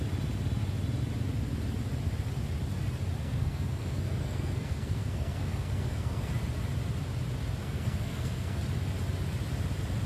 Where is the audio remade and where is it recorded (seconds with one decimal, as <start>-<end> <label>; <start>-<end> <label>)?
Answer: 0.0-3.2 recorded; 3.2-6.3 remade; 6.3-7.6 recorded; 7.6-8.6 remade; 8.6-10.1 recorded